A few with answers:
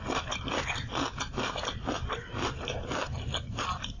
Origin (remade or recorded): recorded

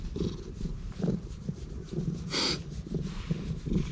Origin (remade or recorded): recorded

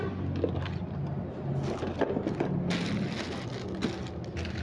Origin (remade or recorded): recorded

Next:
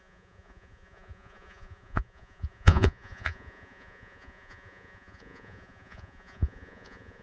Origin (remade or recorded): remade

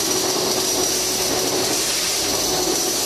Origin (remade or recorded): recorded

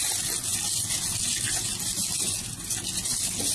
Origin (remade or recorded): recorded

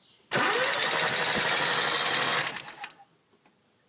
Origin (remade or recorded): recorded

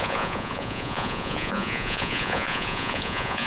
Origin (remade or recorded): remade